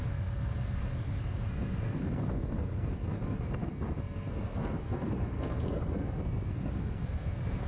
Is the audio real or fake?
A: fake